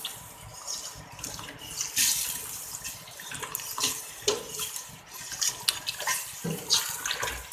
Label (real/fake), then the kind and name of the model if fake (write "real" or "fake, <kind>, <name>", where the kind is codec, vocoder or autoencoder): real